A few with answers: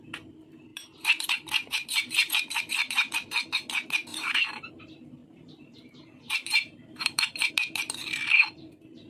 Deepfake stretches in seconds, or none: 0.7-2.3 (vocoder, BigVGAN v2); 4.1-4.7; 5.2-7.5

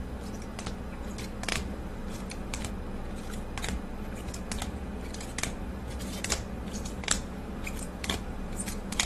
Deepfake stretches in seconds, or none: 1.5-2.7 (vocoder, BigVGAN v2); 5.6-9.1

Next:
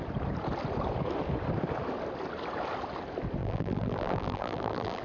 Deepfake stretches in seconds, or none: 3.4-5.0 (vocoder, BigVGAN v2)

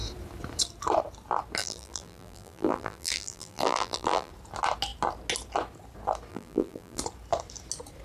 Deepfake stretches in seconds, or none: 1.6-4.3 (vocoder, BigVGAN v2); 6.3-7.0

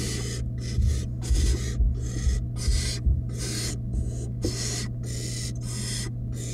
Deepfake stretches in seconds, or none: 3.1-3.7 (vocoder, BigVGAN v2)

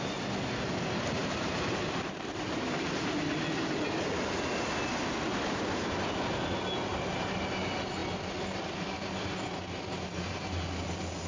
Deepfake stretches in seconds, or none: 1.2-3.2 (vocoder, BigVGAN v2); 6.9-7.4